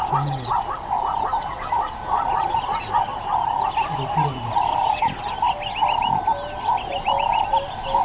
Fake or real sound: real